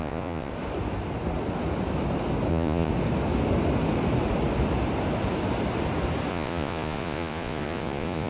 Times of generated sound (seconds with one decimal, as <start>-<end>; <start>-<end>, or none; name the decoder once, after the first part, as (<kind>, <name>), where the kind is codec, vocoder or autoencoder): 0.0-0.5 (vocoder, Vocos); 2.5-2.9; 6.3-8.3